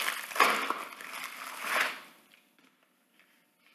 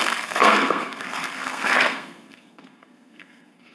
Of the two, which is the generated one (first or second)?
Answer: second